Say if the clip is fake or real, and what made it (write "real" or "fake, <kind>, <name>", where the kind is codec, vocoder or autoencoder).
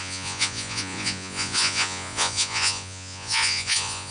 fake, vocoder, Vocos